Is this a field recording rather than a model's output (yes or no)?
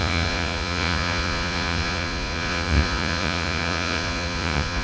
no